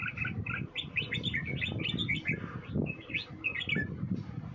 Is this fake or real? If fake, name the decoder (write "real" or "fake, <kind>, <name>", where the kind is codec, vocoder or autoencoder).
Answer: real